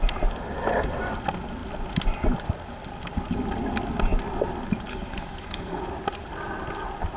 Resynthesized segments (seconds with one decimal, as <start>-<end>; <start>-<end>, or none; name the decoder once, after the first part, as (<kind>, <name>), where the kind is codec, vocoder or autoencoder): 4.9-5.8 (codec, SNAC)